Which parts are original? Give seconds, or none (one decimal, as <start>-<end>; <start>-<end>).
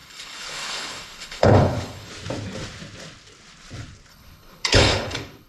2.1-4.1